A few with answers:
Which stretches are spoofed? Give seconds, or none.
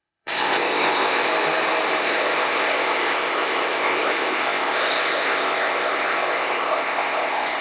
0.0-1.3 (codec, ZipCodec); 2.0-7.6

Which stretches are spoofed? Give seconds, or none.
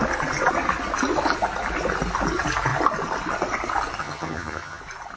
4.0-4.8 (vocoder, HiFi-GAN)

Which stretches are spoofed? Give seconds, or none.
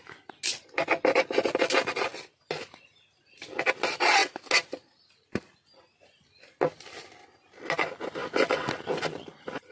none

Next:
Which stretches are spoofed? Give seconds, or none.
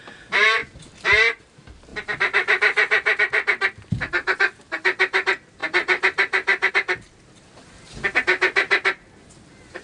0.0-0.6 (vocoder, BigVGAN v2); 1.4-9.8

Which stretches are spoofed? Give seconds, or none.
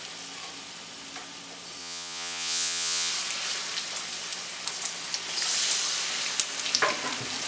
1.8-3.1 (vocoder, Vocos)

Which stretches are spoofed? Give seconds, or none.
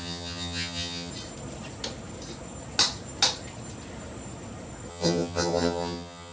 0.0-1.1 (vocoder, HiFi-GAN); 4.9-6.3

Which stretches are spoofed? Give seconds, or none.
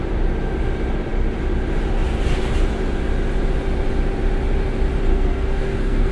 5.1-6.1 (codec, SNAC)